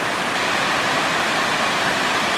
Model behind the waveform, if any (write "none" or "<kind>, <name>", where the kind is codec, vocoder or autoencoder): vocoder, BigVGAN v2